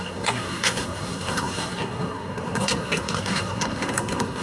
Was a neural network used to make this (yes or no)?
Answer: yes